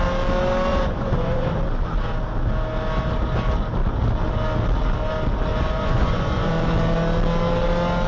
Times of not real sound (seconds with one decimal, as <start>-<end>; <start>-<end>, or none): 0.7-1.5; 5.5-6.5